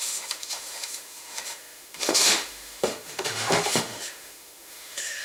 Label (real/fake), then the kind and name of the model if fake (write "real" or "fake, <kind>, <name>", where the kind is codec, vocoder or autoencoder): fake, autoencoder, DAC-VAE